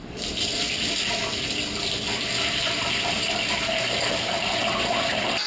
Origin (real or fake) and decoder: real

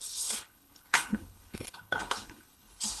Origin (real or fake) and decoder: fake, codec, HILCodec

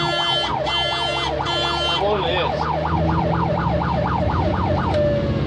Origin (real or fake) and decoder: real